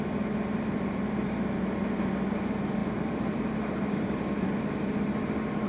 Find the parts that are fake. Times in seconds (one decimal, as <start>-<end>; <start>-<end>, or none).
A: 2.8-4.6